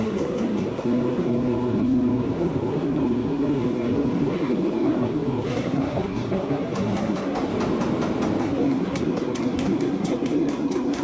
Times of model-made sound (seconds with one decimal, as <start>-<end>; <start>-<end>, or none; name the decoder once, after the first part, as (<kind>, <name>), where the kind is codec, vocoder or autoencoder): 0.0-7.5 (codec, SNAC); 8.4-11.0